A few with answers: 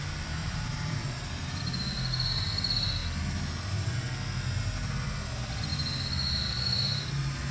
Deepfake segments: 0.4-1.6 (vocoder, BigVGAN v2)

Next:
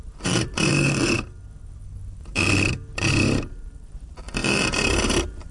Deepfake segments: 0.0-1.0 (vocoder, BigVGAN v2); 3.1-5.5

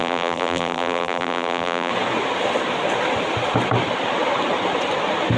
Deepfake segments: 0.0-1.9 (vocoder, BigVGAN v2)